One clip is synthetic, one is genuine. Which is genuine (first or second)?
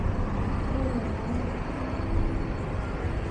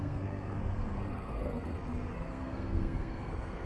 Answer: first